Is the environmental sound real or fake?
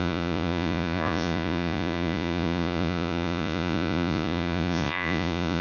fake